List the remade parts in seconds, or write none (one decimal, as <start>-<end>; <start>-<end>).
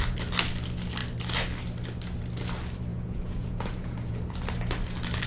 2.9-4.2